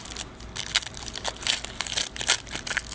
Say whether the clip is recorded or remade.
recorded